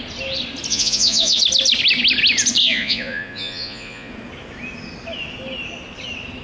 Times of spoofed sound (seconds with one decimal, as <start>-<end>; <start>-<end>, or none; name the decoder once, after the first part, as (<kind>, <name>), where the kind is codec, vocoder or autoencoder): 0.7-1.4 (vocoder, Vocos); 2.6-4.1